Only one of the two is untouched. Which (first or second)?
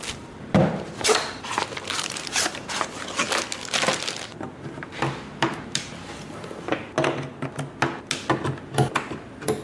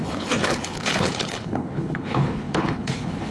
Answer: first